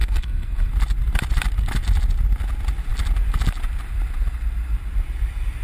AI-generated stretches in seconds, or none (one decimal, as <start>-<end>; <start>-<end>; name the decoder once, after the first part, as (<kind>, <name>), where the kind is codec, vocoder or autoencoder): 0.0-0.7 (codec, SNAC)